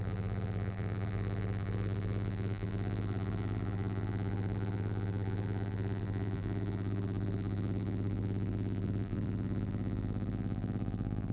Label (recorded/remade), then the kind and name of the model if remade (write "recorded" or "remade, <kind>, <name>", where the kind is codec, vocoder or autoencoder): remade, vocoder, BigVGAN v2